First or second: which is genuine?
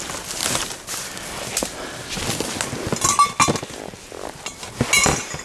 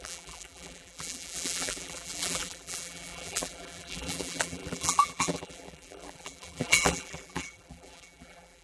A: first